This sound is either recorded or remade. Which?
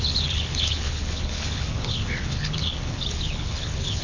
remade